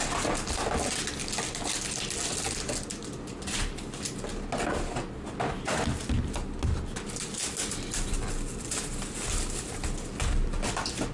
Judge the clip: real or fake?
real